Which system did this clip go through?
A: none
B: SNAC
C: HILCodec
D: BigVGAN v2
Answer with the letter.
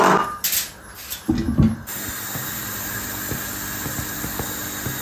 A